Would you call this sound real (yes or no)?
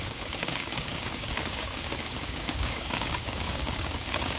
no